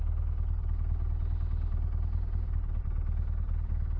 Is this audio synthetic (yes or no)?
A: no